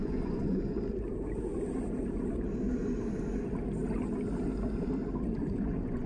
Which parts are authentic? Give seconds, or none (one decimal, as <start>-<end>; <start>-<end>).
0.8-5.4